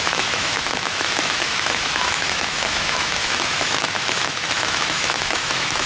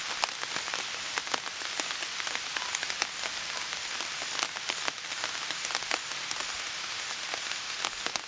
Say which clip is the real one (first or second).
second